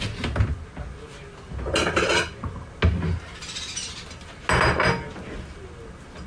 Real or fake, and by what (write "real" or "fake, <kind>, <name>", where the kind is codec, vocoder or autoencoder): real